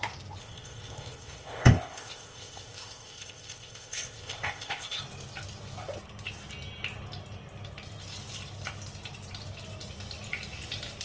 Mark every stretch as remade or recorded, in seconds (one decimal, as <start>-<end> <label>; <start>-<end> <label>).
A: 0.0-0.4 recorded; 0.4-5.0 remade; 5.0-11.0 recorded